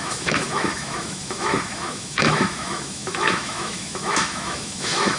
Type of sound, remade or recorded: remade